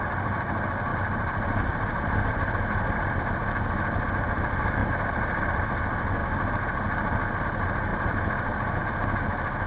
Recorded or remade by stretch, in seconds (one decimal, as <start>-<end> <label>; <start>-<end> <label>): 0.0-0.9 recorded; 0.9-3.1 remade; 3.1-4.8 recorded; 4.8-5.5 remade; 5.5-7.9 recorded; 7.9-8.8 remade; 8.8-9.7 recorded